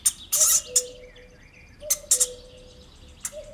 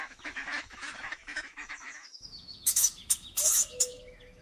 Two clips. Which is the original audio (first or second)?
first